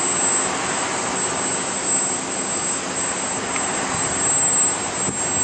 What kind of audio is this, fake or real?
real